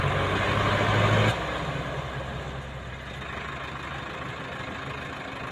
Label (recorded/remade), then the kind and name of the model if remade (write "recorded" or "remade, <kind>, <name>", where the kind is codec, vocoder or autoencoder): recorded